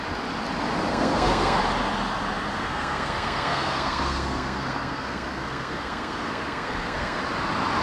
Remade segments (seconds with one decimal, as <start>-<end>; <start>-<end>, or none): 0.9-1.6; 2.5-7.2